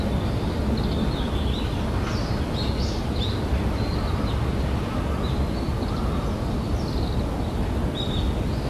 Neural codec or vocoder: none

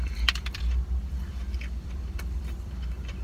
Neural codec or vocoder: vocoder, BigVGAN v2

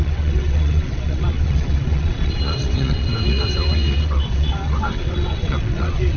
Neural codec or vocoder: vocoder, WaveNeXt